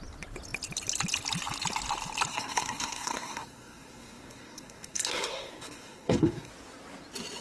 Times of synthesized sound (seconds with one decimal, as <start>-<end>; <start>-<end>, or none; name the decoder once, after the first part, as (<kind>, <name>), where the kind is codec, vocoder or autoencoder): 2.3-6.5 (codec, SNAC)